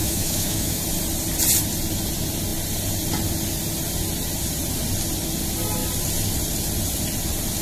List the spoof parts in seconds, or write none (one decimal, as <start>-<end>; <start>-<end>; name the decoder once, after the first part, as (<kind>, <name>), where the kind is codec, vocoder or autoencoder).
0.0-0.8 (autoencoder, DAC-VAE)